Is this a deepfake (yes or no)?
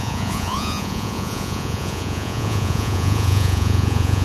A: yes